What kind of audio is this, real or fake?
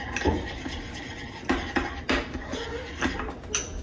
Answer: real